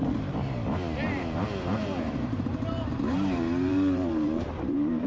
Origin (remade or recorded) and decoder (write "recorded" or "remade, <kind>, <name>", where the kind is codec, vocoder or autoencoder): remade, vocoder, BigVGAN v2